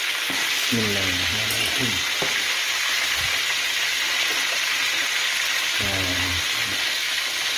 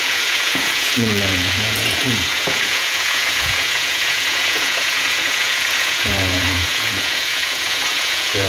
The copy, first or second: second